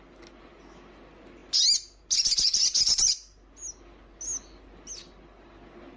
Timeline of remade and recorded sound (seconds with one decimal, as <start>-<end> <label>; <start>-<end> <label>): 0.0-6.0 recorded